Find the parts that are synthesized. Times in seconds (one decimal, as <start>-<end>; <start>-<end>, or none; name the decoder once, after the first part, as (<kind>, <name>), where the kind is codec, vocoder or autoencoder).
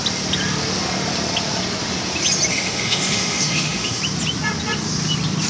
2.5-4.0 (autoencoder, DAC-VAE)